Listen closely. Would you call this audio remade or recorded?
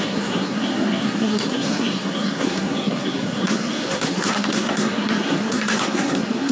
remade